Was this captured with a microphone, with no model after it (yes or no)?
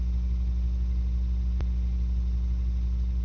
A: yes